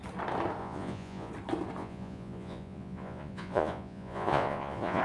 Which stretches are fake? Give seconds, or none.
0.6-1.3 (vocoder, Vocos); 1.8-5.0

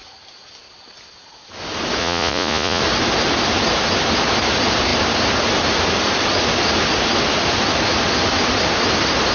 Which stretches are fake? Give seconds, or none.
2.0-2.8 (vocoder, Vocos)

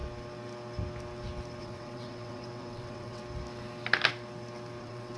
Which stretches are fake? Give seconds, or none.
1.6-3.2 (vocoder, WaveNeXt); 4.8-5.2

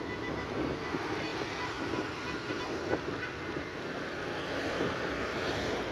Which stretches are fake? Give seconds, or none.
none

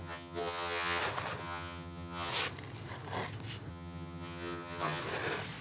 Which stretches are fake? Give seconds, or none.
0.0-1.0 (vocoder, HiFi-GAN); 1.4-2.3; 3.7-5.0

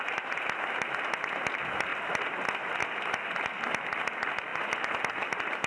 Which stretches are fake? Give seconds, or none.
none